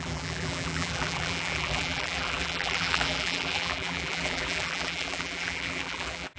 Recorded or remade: remade